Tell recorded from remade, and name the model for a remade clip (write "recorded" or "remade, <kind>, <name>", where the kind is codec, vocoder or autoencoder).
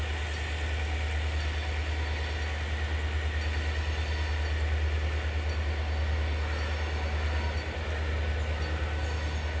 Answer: recorded